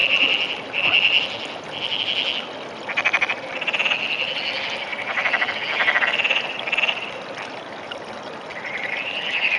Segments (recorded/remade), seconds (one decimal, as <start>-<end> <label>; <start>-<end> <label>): 0.0-8.5 recorded; 8.5-9.6 remade